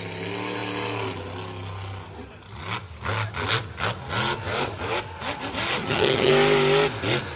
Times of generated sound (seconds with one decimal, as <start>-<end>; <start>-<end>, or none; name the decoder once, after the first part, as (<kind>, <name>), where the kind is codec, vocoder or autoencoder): 5.8-6.3 (vocoder, HiFi-GAN)